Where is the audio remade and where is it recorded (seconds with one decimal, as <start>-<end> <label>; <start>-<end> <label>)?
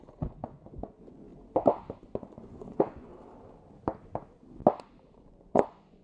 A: 0.0-1.3 remade; 1.3-2.2 recorded; 2.2-3.1 remade; 3.1-5.3 recorded; 5.3-6.0 remade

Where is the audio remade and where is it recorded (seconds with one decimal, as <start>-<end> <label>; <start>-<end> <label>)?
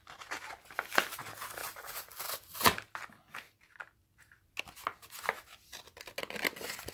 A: 0.0-6.9 recorded